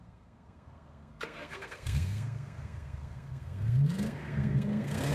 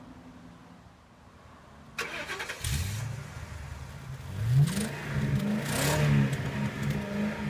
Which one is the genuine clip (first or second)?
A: second